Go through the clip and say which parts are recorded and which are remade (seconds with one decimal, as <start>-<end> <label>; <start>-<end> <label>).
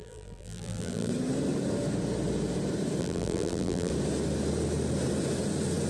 0.0-1.1 remade; 1.1-3.0 recorded; 3.0-3.9 remade; 3.9-5.9 recorded